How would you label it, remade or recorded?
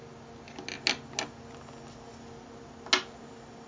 recorded